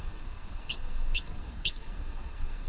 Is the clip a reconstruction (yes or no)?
yes